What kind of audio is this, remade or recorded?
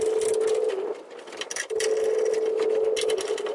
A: recorded